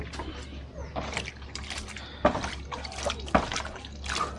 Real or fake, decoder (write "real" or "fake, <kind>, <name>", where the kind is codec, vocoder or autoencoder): real